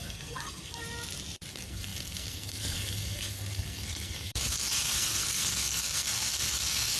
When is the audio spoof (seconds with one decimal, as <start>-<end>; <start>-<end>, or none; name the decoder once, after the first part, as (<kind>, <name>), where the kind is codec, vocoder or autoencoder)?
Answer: 0.0-0.8 (codec, SNAC); 1.5-7.0